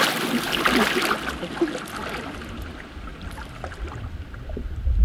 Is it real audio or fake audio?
real